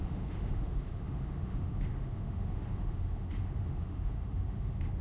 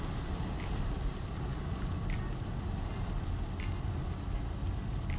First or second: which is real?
second